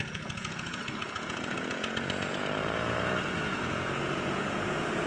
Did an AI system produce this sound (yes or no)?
yes